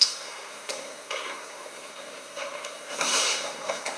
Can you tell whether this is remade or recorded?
remade